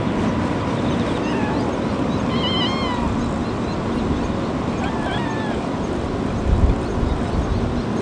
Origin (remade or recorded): recorded